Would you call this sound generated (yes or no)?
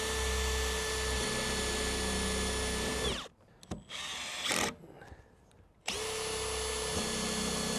no